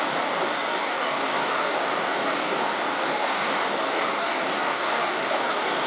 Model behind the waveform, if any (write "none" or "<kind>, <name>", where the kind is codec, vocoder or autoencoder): codec, DAC